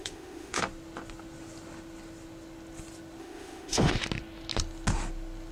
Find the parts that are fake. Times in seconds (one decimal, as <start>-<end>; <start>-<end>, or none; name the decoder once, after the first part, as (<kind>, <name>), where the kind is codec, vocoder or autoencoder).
0.0-0.6 (autoencoder, DAC-VAE); 3.2-4.0